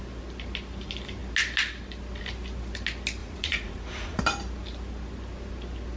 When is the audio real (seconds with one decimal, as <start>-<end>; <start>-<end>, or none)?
0.0-3.2; 4.2-6.0